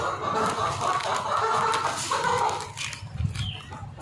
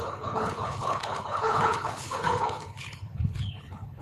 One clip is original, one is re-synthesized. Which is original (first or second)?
first